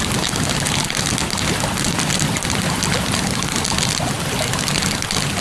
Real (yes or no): yes